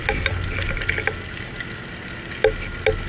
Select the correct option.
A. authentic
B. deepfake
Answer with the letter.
A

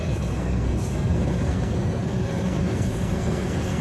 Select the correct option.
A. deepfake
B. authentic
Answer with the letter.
A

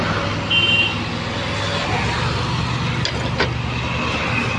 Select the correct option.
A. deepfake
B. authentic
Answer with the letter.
B